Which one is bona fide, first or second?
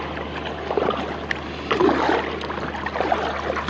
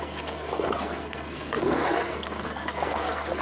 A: first